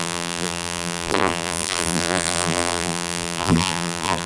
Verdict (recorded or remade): remade